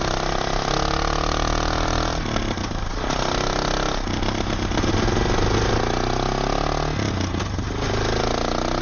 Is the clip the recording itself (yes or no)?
yes